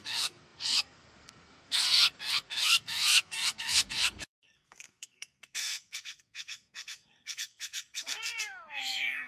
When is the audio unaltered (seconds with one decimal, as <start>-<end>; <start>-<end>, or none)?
none